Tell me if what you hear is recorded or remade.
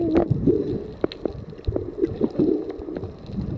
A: recorded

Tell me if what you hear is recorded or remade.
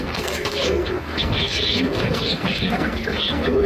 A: remade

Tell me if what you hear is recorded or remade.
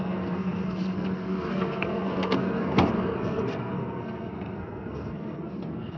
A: remade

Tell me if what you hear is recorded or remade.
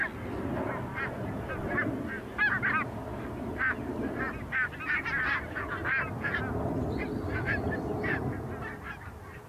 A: recorded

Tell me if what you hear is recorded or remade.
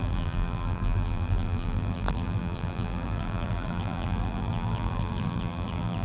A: remade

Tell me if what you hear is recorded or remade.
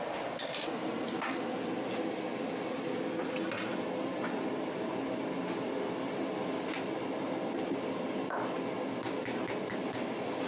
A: recorded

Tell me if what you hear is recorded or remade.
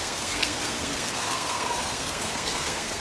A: remade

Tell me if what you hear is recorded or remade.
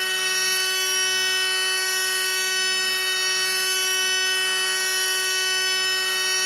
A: remade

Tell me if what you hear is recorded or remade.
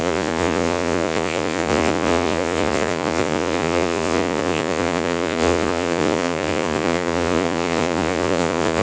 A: remade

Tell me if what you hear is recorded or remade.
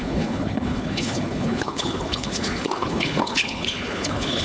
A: remade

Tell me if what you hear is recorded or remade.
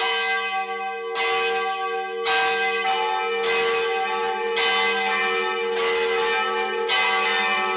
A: recorded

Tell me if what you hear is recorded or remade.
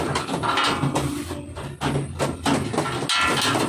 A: recorded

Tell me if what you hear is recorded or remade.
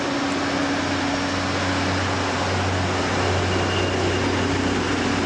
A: recorded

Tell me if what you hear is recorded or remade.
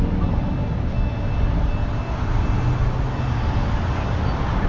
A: recorded